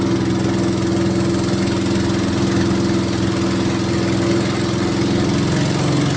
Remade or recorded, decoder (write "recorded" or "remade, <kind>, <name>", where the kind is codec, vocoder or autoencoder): recorded